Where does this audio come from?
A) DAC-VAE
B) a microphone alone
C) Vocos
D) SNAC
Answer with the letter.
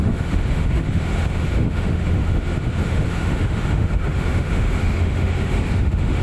A